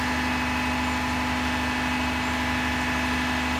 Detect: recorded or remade recorded